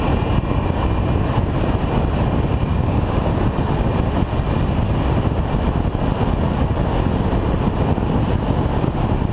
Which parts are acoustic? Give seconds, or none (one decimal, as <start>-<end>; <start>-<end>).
0.0-2.7; 3.3-9.3